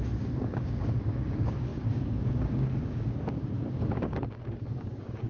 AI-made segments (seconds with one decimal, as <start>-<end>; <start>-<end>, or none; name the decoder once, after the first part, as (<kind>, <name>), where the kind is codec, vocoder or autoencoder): 0.0-5.3 (codec, DAC)